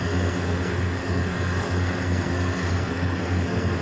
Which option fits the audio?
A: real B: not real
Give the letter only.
B